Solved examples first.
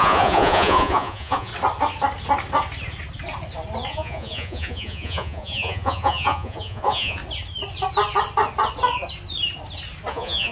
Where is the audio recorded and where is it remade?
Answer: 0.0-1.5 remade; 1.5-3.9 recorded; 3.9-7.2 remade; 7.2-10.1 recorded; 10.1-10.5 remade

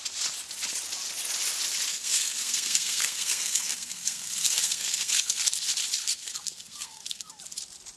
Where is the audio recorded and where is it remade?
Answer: 0.0-1.9 recorded; 1.9-5.4 remade; 5.4-6.0 recorded; 6.0-7.4 remade; 7.4-8.0 recorded

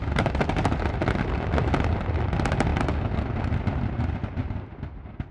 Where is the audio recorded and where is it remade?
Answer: 0.0-5.3 recorded

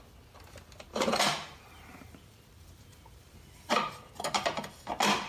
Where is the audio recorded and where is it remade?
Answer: 0.0-0.9 recorded; 0.9-4.1 remade; 4.1-5.3 recorded

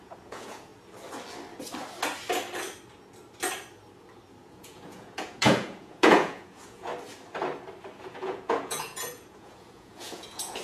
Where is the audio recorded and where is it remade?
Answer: 0.0-0.7 remade; 0.7-4.4 recorded; 4.4-6.9 remade; 6.9-8.0 recorded; 8.0-10.6 remade